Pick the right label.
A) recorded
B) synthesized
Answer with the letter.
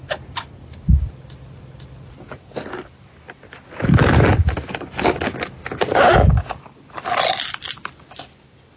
A